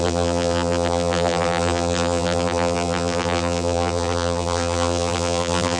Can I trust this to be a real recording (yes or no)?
no